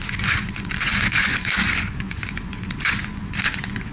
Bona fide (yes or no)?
no